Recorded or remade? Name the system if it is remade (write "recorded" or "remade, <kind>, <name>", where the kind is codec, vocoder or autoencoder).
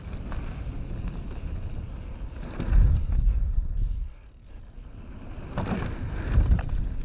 recorded